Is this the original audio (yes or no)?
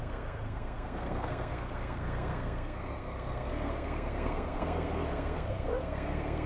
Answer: no